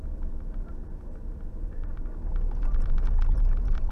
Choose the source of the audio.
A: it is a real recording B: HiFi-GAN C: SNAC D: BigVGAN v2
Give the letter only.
A